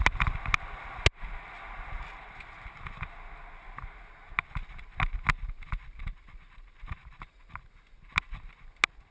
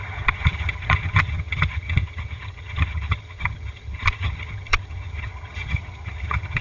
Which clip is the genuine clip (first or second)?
first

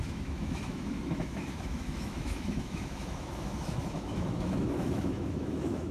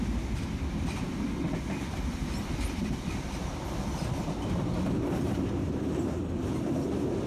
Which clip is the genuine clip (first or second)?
second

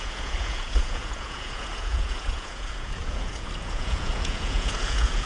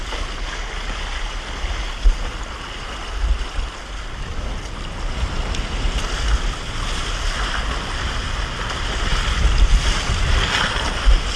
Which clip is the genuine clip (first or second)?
second